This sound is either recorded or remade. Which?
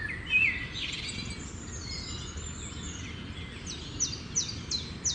recorded